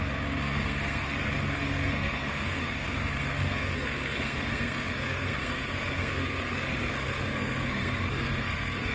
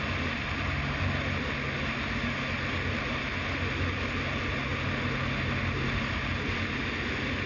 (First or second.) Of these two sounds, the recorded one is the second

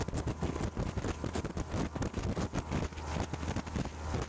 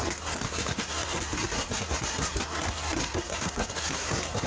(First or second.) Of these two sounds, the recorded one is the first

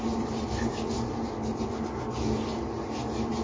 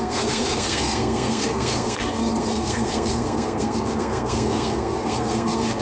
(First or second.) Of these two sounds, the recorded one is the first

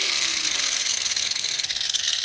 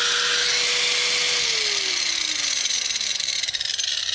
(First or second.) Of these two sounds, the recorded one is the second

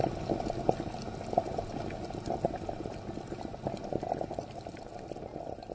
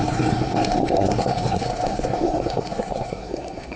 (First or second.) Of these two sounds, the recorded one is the first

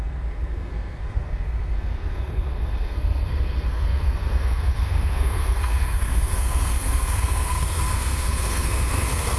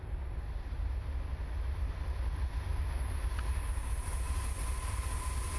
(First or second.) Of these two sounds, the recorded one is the second